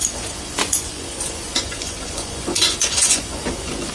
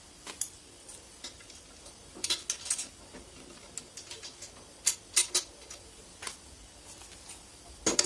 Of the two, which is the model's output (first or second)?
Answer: first